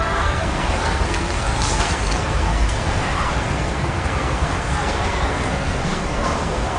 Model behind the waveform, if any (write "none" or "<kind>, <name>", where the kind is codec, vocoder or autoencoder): codec, SNAC